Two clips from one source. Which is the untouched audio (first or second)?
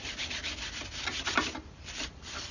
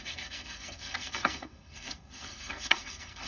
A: first